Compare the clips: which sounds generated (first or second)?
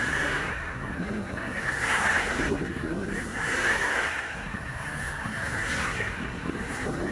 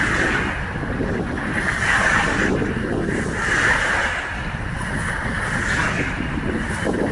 first